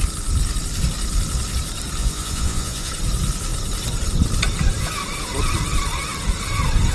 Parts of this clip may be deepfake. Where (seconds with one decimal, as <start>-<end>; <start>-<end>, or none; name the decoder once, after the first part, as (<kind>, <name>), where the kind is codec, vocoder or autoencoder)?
2.0-2.9 (vocoder, Vocos)